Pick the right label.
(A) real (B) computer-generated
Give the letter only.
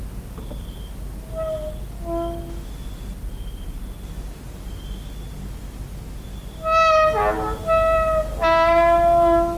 A